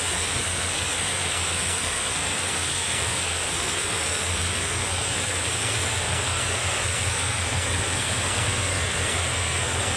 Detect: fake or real fake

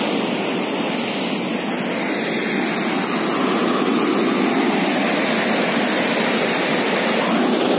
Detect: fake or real real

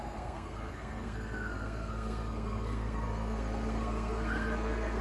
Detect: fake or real fake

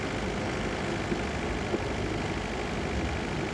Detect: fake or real real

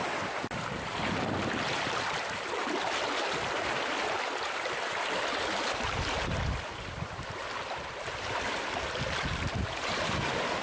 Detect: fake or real real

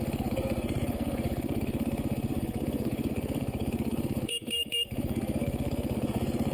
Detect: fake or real fake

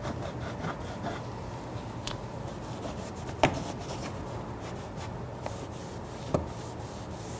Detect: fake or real real